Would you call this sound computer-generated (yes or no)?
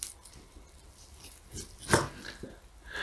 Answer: no